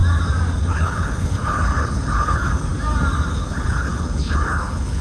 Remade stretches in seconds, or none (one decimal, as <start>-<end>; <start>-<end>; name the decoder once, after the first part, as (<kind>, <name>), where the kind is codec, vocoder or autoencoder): 0.6-2.7 (codec, HILCodec); 3.3-5.0